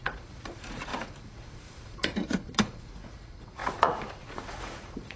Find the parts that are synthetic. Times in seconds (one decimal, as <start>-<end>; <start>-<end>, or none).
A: 0.0-5.2